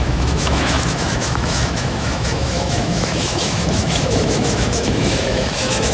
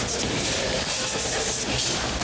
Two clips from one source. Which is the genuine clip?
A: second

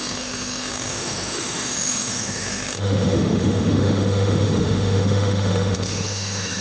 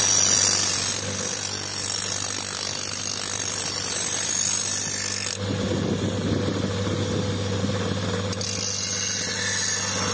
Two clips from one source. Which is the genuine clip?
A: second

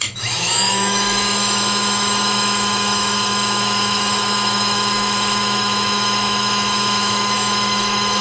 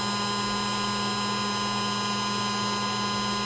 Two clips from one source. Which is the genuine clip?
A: second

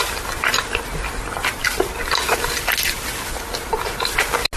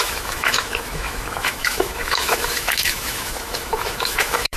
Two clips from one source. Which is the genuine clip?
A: first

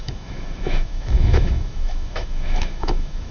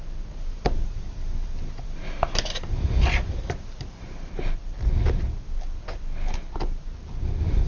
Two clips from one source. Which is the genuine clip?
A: second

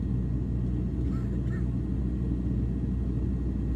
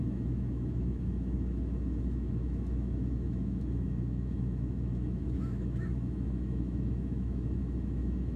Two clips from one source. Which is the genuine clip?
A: first